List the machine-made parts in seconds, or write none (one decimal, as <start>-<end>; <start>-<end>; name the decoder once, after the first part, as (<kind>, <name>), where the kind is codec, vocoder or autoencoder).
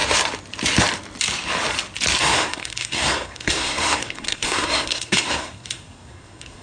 2.2-6.6 (codec, SNAC)